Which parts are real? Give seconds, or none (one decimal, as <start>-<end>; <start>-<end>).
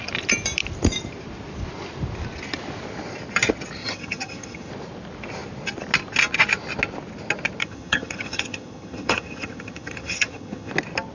0.0-3.8; 4.7-7.6; 10.7-11.1